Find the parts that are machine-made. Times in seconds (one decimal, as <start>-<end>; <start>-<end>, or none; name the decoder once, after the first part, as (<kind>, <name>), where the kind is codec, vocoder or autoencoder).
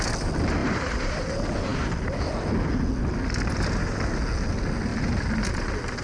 0.6-1.2 (vocoder, BigVGAN v2)